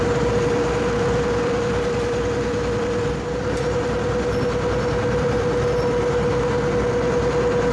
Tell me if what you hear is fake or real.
real